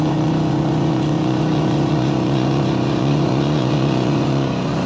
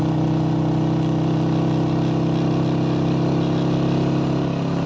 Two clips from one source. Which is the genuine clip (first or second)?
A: second